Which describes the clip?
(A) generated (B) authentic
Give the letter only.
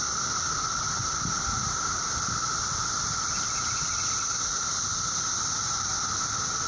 A